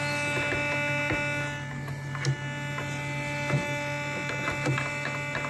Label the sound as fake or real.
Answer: real